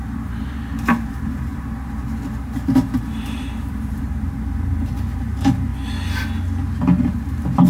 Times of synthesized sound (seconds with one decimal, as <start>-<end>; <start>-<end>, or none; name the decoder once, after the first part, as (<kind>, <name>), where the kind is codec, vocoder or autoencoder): 0.0-5.7 (vocoder, BigVGAN v2); 7.0-7.7

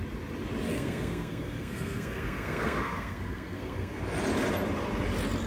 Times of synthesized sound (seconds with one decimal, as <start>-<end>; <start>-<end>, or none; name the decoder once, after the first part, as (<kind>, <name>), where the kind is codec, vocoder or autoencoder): 0.7-4.0 (codec, SNAC)

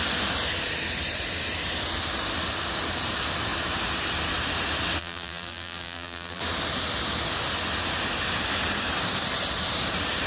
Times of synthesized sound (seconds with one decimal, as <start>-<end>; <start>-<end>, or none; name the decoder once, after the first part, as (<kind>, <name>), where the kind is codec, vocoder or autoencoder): 5.0-6.4 (vocoder, BigVGAN v2)

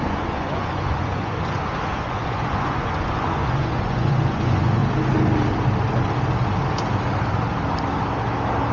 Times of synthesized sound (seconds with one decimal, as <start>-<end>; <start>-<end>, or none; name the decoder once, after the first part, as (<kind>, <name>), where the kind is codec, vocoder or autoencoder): 0.0-4.8 (vocoder, Vocos)